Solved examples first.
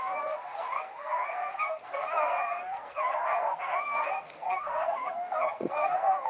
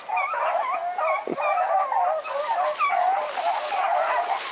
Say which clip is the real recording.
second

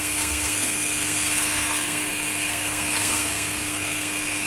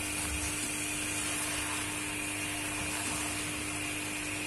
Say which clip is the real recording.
second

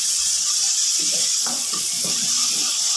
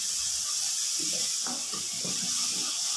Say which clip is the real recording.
second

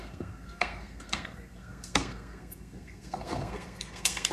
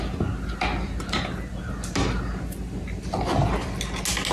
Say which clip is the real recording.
second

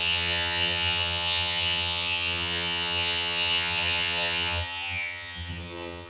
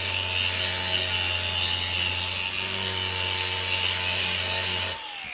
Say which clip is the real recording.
second